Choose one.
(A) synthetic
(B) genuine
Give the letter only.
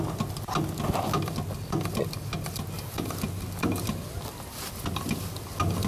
B